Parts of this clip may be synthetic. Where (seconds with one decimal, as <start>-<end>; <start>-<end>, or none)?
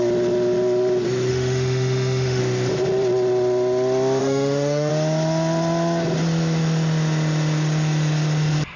1.3-2.4; 4.2-4.9